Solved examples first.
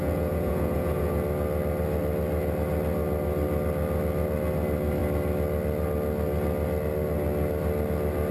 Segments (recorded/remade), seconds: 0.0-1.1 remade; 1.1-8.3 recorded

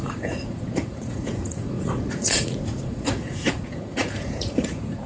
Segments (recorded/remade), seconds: 0.0-5.1 remade